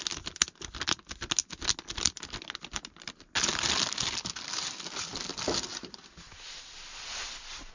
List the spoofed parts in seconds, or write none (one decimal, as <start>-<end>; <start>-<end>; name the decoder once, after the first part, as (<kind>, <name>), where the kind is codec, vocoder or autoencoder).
none